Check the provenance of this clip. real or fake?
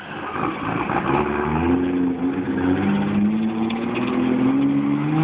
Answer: real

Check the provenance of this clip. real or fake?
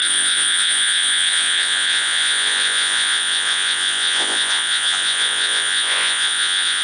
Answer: fake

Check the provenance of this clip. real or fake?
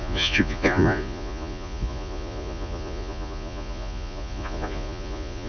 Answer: fake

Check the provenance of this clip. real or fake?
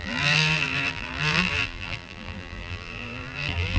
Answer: fake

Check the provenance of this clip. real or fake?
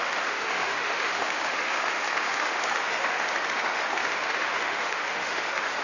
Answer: fake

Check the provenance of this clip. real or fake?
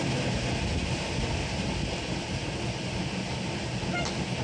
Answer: real